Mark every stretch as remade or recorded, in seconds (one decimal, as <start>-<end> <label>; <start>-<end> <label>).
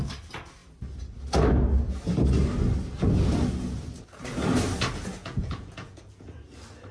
0.0-5.2 recorded; 5.2-6.3 remade; 6.3-6.9 recorded